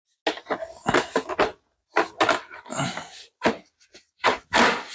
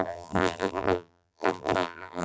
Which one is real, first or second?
first